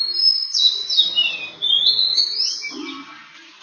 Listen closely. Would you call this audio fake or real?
real